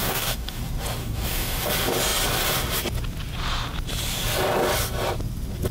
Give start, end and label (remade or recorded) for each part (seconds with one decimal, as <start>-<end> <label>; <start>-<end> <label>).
0.0-0.6 remade; 0.6-1.0 recorded; 1.0-1.7 remade; 1.7-5.7 recorded

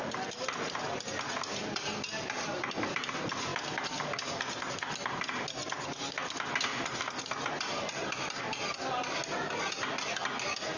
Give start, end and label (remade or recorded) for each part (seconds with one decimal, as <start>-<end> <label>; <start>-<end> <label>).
0.0-10.8 recorded